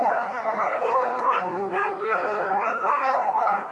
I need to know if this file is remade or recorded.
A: remade